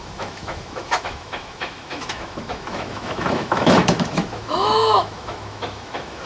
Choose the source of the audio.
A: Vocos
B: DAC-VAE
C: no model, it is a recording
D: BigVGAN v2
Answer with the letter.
B